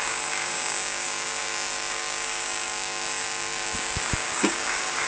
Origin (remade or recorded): remade